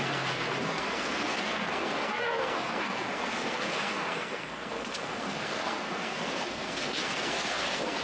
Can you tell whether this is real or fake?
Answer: fake